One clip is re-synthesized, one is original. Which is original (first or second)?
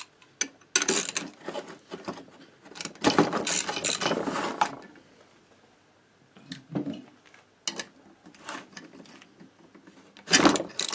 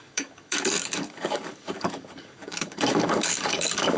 first